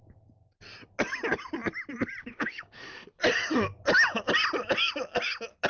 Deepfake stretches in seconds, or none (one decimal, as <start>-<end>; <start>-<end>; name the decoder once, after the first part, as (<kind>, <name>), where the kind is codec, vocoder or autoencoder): 2.2-3.2 (codec, HILCodec)